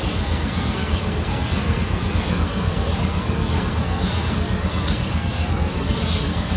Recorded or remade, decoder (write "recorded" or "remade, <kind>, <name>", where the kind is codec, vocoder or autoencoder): remade, codec, SNAC